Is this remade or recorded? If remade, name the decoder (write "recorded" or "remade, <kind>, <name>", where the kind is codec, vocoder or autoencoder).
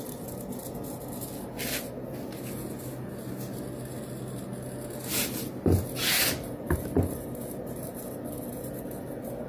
recorded